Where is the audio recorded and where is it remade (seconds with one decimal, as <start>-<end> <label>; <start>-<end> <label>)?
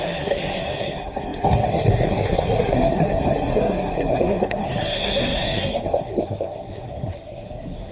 0.0-7.9 remade